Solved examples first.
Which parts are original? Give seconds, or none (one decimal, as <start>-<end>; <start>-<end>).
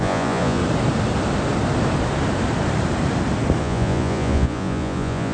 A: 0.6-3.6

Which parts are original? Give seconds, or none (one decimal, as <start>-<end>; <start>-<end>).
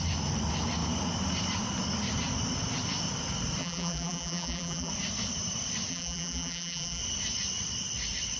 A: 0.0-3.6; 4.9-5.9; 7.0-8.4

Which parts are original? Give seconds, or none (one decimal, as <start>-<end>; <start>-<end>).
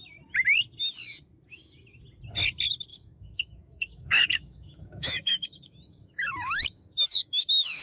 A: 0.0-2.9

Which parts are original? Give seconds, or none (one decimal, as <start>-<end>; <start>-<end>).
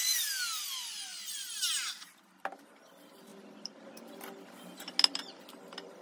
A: 0.0-6.0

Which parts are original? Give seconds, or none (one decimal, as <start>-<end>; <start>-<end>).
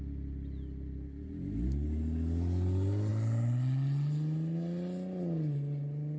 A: 0.0-6.2